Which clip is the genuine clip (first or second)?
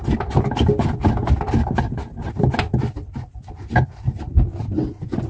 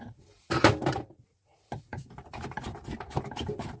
first